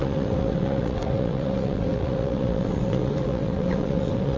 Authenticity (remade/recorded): remade